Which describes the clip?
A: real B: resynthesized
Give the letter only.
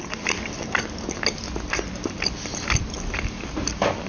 A